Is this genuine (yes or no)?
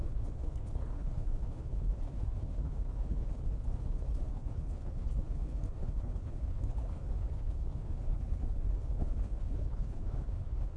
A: no